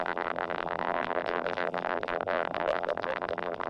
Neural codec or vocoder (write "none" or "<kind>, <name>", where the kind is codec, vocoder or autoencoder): vocoder, BigVGAN v2